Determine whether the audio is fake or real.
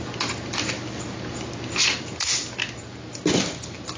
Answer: real